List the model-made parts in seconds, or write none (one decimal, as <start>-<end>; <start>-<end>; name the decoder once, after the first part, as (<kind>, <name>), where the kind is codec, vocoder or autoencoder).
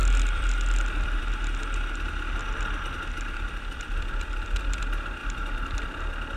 0.0-1.2 (vocoder, BigVGAN v2); 2.4-4.8; 5.2-6.0